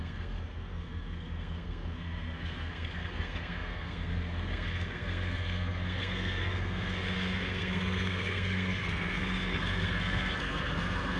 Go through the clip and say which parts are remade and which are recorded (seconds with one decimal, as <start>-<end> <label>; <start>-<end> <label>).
0.0-11.2 remade